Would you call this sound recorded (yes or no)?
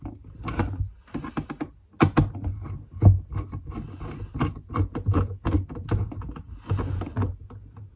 yes